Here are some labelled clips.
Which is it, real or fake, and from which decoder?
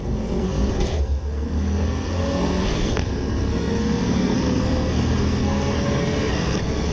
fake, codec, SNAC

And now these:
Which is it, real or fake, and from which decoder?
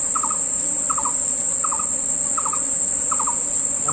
real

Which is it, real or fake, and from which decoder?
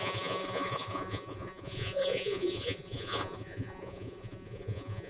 fake, vocoder, Vocos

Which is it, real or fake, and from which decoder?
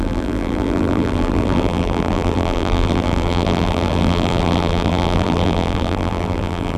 fake, vocoder, BigVGAN v2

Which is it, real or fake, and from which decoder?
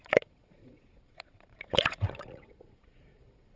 fake, vocoder, Vocos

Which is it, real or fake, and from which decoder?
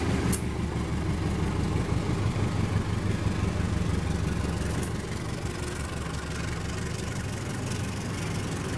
real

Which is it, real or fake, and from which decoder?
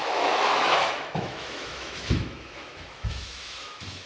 fake, autoencoder, DAC-VAE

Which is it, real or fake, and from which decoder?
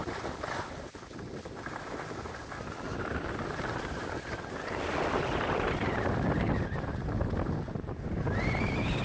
real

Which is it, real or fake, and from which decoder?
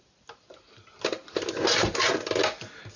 real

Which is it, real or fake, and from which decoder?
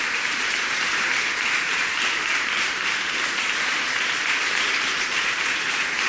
fake, vocoder, BigVGAN v2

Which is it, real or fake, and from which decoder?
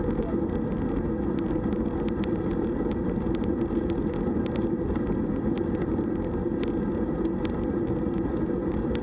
real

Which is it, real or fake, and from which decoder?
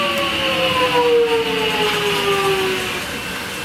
real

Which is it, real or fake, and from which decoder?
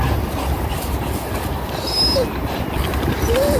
real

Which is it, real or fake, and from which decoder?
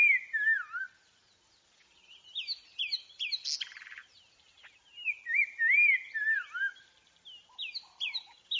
real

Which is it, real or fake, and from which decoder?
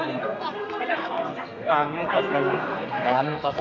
fake, codec, SNAC